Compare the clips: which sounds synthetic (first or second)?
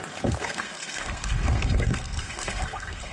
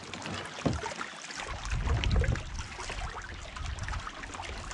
first